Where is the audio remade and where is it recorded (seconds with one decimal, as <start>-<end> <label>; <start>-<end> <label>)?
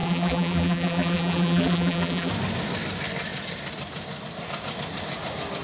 0.0-2.3 remade; 2.3-5.6 recorded